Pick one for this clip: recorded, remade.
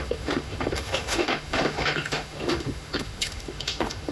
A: remade